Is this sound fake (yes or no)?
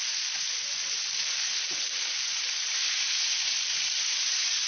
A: yes